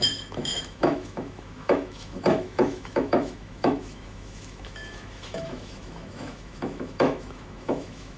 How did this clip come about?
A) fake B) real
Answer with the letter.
A